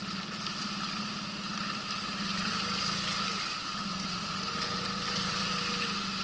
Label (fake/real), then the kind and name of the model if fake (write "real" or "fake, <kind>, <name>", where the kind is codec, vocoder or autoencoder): real